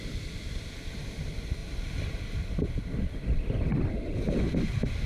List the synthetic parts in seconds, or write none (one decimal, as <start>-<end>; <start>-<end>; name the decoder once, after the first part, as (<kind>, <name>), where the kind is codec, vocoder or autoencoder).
1.6-5.1 (vocoder, BigVGAN v2)

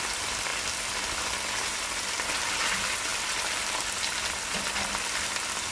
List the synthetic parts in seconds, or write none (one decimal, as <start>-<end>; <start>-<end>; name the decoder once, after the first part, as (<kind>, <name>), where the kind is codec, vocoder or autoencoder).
none

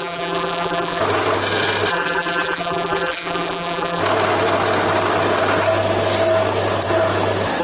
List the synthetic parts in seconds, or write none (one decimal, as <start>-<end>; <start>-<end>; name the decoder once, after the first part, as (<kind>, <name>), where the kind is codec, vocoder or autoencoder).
0.0-1.0 (vocoder, BigVGAN v2); 1.9-4.0

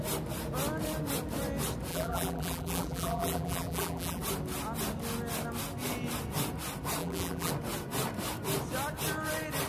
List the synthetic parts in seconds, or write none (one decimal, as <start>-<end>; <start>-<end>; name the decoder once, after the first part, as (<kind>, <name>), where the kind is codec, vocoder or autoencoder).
1.9-4.2 (vocoder, BigVGAN v2); 7.0-7.5